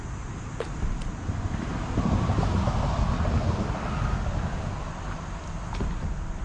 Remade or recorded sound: recorded